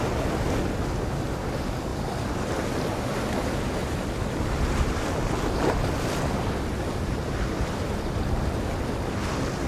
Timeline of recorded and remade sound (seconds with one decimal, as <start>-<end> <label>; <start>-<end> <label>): 0.0-3.8 recorded; 3.8-8.5 remade; 8.5-9.7 recorded